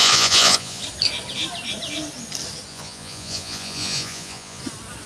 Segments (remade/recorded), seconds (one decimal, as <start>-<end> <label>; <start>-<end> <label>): 0.0-0.8 remade; 0.8-2.7 recorded; 2.7-4.6 remade; 4.6-5.1 recorded